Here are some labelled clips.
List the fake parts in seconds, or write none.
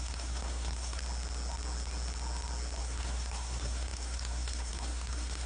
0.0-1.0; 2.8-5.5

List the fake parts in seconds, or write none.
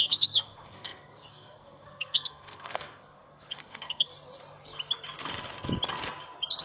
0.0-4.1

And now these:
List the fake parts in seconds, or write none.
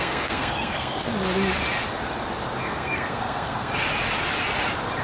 0.0-1.1; 2.6-3.7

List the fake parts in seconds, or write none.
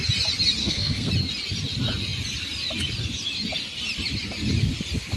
0.6-1.1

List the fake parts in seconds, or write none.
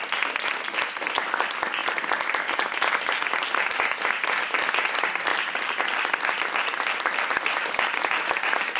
none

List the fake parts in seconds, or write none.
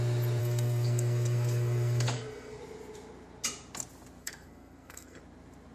0.4-2.6; 4.2-5.2